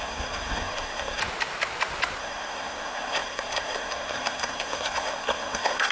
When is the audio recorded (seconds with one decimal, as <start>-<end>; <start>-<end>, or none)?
1.2-2.2